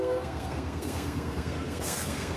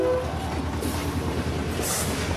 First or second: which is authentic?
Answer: second